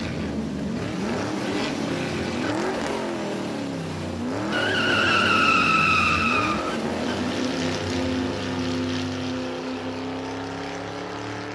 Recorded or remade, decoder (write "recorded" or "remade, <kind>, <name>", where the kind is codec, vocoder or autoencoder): recorded